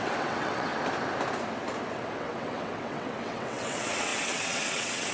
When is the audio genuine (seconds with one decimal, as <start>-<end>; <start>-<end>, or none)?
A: 0.7-1.9